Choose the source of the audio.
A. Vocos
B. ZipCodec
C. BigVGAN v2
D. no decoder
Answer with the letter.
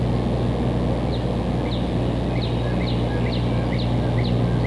D